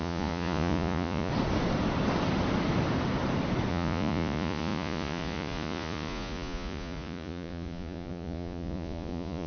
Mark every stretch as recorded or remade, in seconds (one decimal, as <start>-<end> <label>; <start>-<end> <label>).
0.0-1.3 remade; 1.3-3.7 recorded; 3.7-9.5 remade